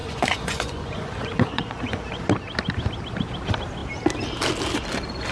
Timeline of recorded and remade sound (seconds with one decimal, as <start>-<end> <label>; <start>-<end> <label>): 0.0-2.2 remade; 2.2-5.3 recorded